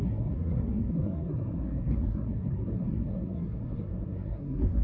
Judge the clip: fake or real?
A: fake